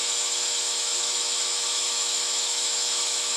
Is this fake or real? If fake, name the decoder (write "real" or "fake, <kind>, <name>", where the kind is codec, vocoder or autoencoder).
fake, autoencoder, DAC-VAE